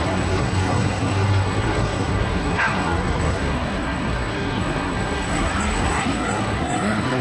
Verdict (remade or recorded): remade